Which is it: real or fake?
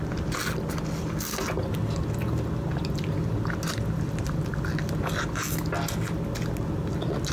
real